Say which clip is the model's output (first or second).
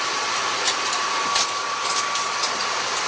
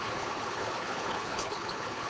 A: second